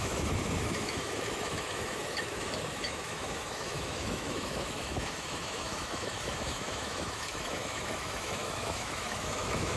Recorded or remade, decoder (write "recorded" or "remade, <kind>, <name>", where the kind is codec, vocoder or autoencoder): remade, autoencoder, DAC-VAE